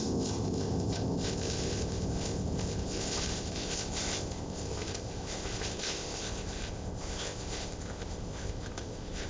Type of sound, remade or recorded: remade